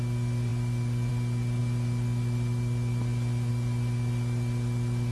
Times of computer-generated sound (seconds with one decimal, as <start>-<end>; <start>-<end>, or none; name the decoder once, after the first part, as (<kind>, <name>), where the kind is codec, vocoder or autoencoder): none